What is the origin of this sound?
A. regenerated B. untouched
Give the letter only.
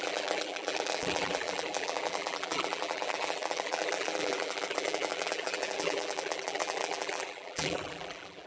A